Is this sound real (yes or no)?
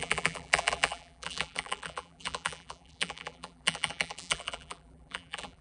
no